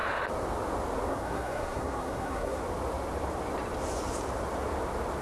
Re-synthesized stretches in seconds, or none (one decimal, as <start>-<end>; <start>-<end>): 1.1-2.6

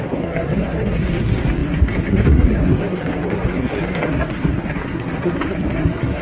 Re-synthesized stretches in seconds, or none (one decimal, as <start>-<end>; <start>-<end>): 0.0-6.2

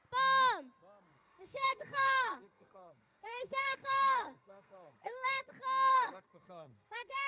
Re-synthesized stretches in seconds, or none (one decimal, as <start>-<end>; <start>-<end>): 1.1-5.5; 5.9-7.3

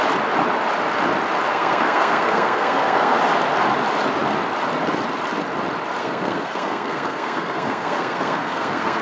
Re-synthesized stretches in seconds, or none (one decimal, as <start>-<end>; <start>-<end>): 1.5-3.2; 6.0-9.0

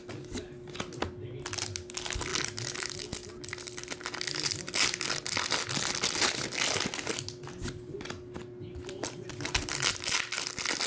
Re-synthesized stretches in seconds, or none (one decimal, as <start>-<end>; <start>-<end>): none

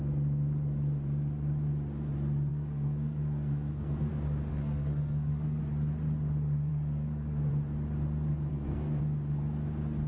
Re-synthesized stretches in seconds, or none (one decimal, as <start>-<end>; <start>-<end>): 2.5-4.1; 4.5-5.6; 6.7-7.5; 8.5-9.0

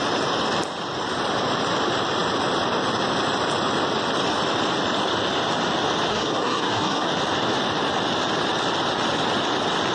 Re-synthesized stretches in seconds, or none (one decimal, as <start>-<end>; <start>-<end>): 6.1-7.1

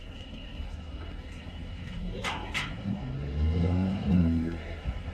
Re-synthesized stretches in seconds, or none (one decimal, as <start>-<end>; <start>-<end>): 0.0-5.1